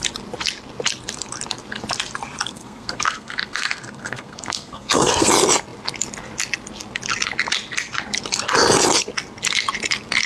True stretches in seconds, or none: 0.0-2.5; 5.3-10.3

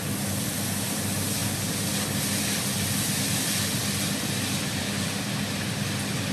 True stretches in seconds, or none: 0.0-6.3

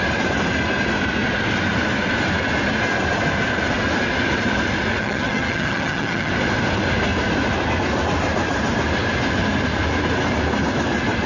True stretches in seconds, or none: 0.0-5.0; 6.3-11.3

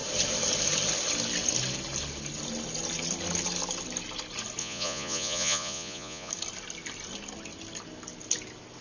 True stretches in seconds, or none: 0.0-4.6; 6.3-8.8

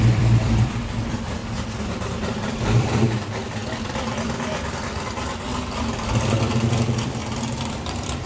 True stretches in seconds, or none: 1.4-2.3; 3.6-4.6; 5.5-6.5; 7.2-7.7

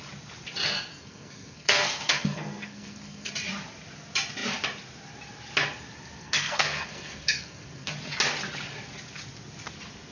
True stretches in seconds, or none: 0.0-0.9; 3.3-6.2; 7.9-10.1

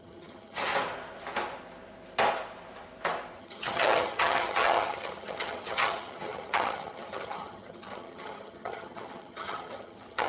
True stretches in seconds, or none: 0.7-3.4